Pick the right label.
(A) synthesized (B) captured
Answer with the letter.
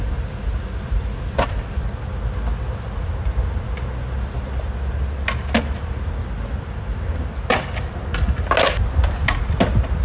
B